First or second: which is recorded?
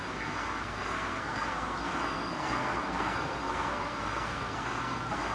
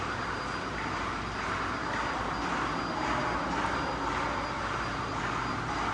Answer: second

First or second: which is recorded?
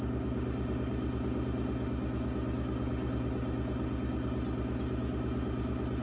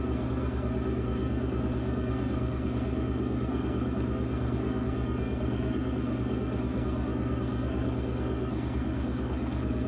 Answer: first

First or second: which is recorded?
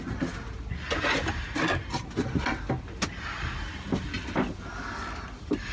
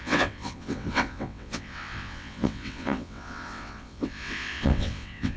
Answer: first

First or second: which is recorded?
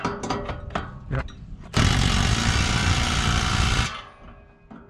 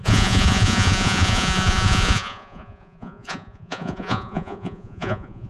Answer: first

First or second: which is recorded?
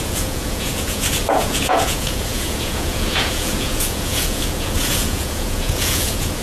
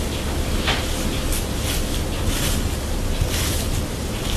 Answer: second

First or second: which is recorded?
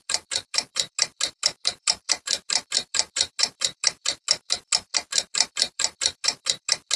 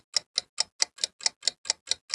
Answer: second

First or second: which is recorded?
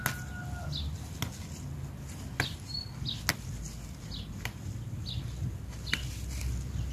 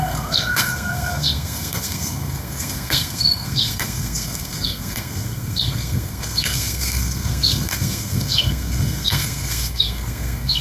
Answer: first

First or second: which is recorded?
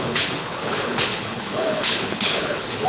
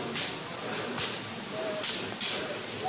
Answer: second